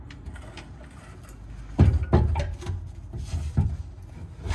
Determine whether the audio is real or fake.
real